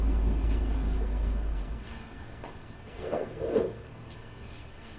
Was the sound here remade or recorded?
remade